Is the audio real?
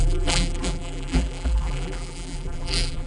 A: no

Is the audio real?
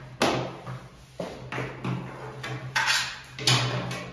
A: yes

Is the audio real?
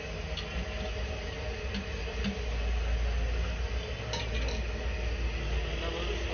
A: yes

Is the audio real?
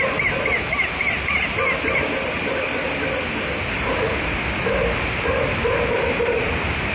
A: yes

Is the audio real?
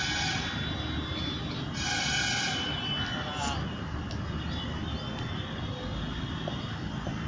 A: yes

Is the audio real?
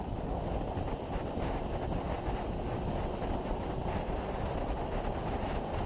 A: yes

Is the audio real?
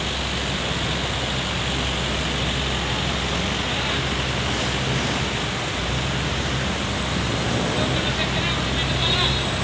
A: yes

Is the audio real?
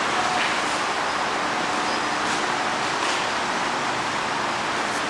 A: no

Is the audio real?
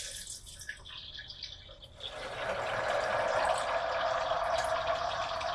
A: yes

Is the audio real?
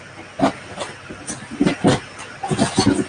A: yes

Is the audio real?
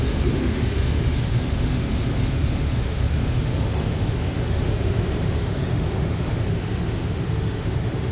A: no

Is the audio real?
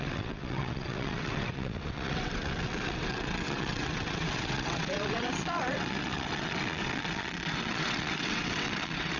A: no